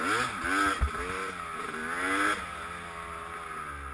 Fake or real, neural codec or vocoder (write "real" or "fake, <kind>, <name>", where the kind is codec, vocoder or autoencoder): real